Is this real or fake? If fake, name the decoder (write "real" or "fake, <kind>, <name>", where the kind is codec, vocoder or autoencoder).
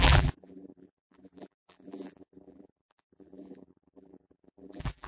fake, vocoder, BigVGAN v2